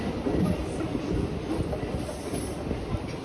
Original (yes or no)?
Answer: yes